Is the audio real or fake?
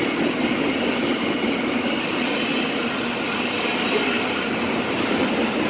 real